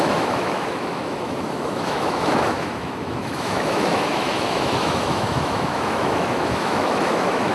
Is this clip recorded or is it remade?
remade